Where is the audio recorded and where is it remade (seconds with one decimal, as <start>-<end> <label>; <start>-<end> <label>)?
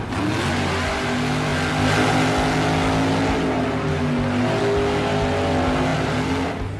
0.0-6.8 recorded